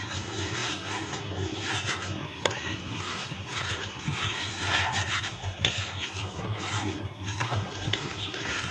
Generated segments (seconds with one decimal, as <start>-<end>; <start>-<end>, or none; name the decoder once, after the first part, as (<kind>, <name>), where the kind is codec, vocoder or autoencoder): 0.0-8.7 (codec, SNAC)